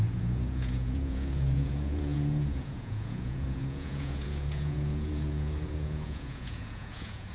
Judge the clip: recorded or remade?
remade